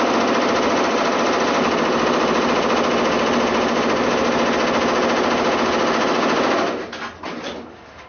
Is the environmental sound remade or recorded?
recorded